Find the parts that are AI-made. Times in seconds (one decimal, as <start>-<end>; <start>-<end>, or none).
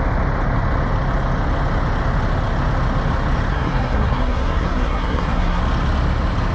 3.5-5.6